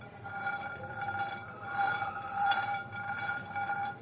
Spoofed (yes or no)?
yes